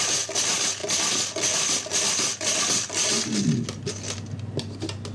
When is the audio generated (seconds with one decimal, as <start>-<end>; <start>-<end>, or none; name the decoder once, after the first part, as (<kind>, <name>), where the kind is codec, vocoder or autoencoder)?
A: none